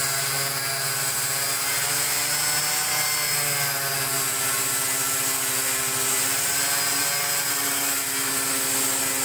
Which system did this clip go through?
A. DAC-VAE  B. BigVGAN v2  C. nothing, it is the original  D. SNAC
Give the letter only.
C